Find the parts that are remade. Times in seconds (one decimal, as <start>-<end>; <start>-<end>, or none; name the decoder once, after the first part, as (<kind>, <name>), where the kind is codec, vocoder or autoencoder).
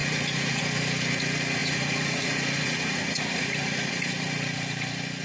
0.0-0.6 (vocoder, Vocos); 1.6-3.9